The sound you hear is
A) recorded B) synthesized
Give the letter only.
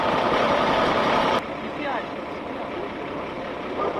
A